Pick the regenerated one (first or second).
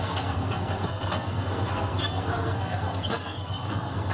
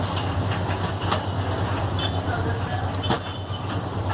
first